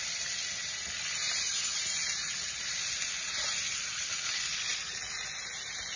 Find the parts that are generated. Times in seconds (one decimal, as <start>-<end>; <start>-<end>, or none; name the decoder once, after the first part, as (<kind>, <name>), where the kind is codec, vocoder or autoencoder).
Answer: none